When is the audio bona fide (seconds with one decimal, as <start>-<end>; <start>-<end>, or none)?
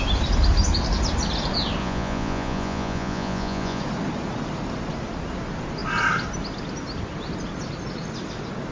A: 0.0-1.8; 3.8-8.7